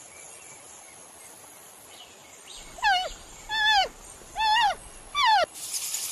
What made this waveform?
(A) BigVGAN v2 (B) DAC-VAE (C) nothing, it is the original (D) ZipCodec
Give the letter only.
C